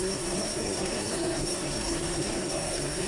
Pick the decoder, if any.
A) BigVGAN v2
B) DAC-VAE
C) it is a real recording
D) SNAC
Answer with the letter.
D